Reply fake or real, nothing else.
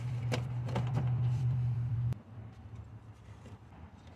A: fake